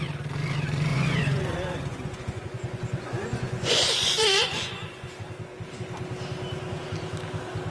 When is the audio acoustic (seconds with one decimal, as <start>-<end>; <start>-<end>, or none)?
0.0-0.9; 5.1-7.7